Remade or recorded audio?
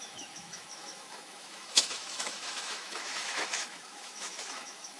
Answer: remade